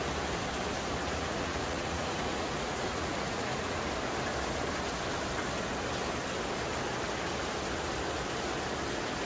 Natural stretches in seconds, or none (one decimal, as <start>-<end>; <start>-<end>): 0.0-1.0; 3.8-9.3